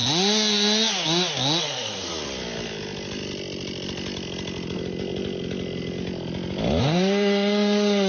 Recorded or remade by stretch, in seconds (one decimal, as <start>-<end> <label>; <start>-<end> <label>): 0.0-1.6 recorded; 1.6-2.1 remade; 2.1-6.8 recorded; 6.8-8.1 remade